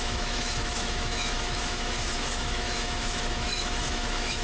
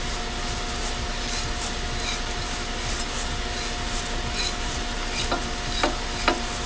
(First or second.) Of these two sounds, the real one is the second